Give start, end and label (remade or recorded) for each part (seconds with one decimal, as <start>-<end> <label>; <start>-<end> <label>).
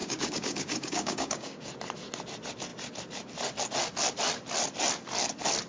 0.0-1.7 remade; 1.7-5.7 recorded